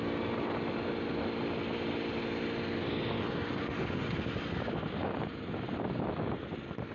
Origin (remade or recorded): recorded